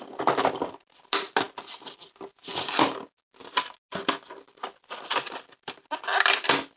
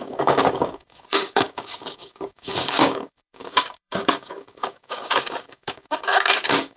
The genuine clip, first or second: first